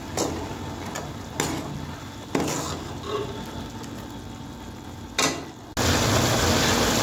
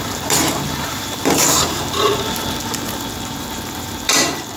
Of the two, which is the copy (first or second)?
second